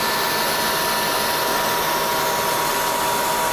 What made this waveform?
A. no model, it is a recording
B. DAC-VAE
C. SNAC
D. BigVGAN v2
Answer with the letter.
A